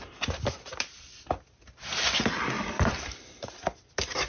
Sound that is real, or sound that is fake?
fake